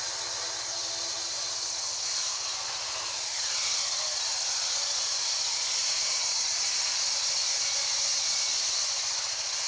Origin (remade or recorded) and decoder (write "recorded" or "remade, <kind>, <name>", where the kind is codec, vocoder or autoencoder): recorded